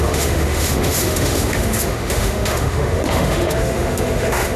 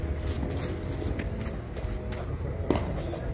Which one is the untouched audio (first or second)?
second